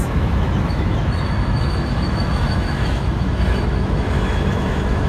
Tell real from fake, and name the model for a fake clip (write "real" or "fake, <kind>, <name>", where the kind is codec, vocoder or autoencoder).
fake, autoencoder, DAC-VAE